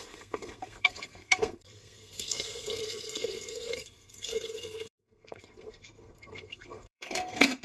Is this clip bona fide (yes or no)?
no